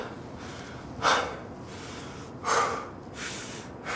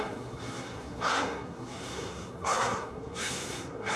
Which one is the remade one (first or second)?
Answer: second